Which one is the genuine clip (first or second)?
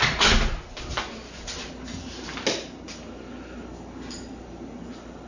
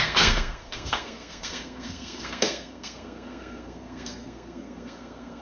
first